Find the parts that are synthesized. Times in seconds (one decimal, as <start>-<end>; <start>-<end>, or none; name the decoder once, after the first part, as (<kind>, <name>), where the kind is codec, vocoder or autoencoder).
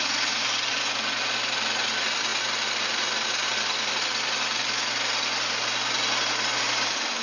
none